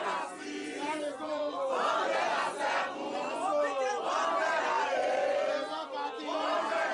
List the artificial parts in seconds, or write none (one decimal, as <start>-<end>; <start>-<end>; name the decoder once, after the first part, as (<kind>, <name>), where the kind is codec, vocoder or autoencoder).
0.7-3.9 (vocoder, Vocos); 5.0-5.5